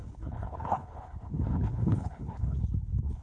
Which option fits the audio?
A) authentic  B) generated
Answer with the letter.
B